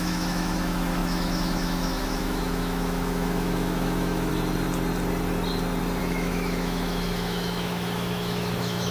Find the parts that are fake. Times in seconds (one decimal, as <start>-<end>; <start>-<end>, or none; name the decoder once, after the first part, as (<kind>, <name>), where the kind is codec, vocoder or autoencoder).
0.0-4.3 (autoencoder, DAC-VAE); 6.0-8.9